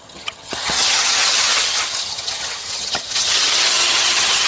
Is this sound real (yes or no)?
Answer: no